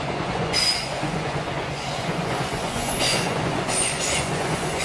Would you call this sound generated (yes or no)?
yes